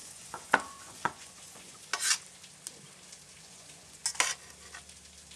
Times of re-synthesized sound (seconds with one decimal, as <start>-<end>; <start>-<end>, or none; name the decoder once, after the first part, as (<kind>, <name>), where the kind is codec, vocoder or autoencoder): 0.0-1.9 (vocoder, Vocos); 3.4-4.0